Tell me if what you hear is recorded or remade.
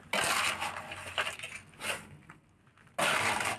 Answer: recorded